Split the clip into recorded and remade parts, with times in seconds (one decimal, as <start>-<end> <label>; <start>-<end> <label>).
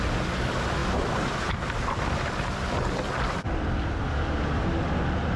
0.0-0.8 recorded; 0.8-4.0 remade; 4.0-5.4 recorded